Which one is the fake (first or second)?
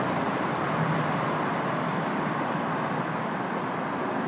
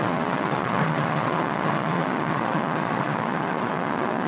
second